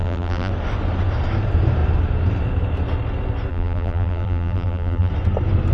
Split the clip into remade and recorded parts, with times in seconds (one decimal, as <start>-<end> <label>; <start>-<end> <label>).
0.0-0.5 remade; 0.5-3.5 recorded; 3.5-5.1 remade; 5.1-5.7 recorded